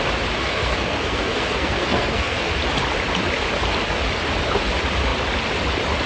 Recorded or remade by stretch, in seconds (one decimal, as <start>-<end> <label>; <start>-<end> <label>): 0.0-0.4 recorded; 0.4-2.5 remade; 2.5-6.1 recorded